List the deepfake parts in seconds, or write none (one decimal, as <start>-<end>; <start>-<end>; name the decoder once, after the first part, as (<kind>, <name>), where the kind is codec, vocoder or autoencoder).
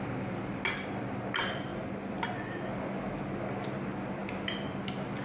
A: none